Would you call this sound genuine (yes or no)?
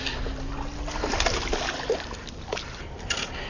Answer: yes